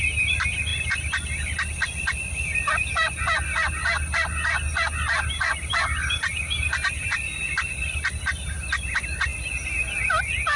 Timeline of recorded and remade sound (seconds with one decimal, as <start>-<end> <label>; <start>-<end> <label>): 0.0-10.6 recorded